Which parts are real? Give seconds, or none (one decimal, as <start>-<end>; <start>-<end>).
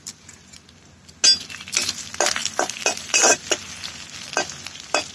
0.0-2.4